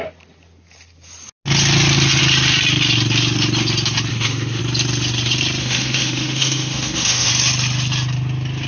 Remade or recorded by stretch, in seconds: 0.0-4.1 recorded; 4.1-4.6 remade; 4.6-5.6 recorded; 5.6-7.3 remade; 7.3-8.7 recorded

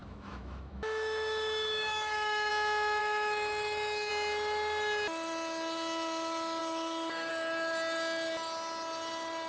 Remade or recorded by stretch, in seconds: 0.0-2.5 remade; 2.5-3.0 recorded; 3.0-4.1 remade; 4.1-6.6 recorded; 6.6-7.3 remade; 7.3-9.5 recorded

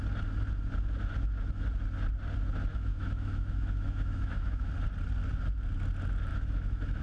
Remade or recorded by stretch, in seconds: 0.0-2.7 recorded; 2.7-4.7 remade; 4.7-6.3 recorded; 6.3-7.0 remade

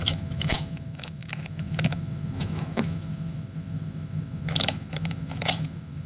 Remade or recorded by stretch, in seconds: 0.0-6.1 remade